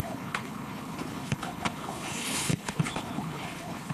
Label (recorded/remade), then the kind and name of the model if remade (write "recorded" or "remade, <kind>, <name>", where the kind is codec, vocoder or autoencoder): remade, codec, HILCodec